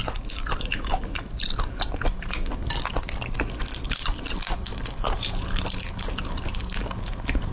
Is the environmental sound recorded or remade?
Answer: recorded